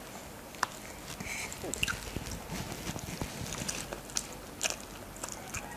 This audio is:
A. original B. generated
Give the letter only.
A